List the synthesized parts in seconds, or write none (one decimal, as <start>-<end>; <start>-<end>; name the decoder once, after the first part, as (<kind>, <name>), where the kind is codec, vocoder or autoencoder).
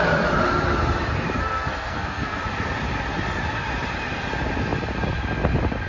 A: 1.4-2.4 (codec, SNAC)